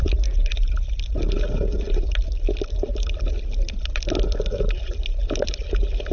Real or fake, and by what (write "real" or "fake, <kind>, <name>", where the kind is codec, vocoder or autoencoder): real